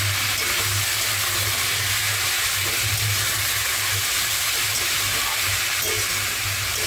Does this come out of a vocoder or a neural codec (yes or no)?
no